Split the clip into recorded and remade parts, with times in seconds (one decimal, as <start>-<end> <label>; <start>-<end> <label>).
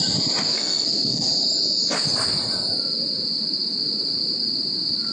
0.0-0.5 recorded; 0.5-1.3 remade; 1.3-5.1 recorded